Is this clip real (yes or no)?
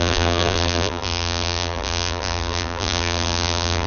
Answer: no